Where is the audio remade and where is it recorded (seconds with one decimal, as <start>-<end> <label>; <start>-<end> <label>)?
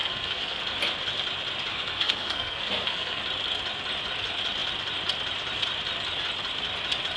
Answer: 0.0-0.6 remade; 0.6-1.7 recorded; 1.7-3.2 remade; 3.2-7.2 recorded